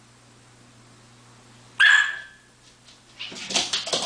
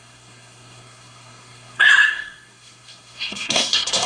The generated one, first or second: second